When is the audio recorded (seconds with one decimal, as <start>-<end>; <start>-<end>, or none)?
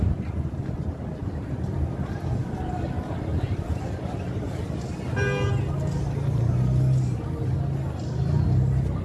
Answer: 0.0-1.2; 1.7-9.0